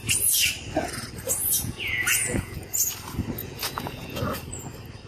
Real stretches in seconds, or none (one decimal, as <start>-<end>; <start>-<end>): 0.0-1.4; 2.8-3.4; 4.2-5.1